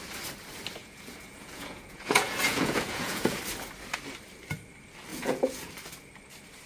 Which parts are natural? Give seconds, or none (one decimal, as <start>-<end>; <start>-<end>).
0.0-0.8; 3.4-5.1; 5.7-6.7

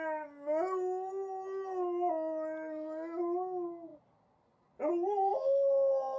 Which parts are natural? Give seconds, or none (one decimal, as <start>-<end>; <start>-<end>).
0.0-6.2